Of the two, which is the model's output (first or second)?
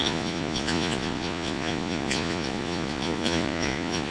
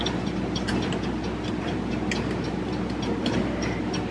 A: first